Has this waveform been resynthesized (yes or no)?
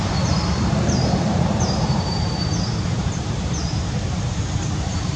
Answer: yes